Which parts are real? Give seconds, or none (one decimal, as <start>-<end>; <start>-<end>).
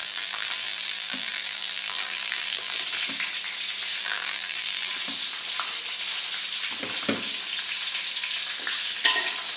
2.8-4.0; 4.9-9.6